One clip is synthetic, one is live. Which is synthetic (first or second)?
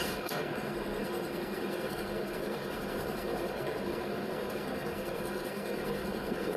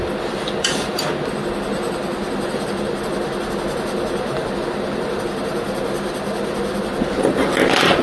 first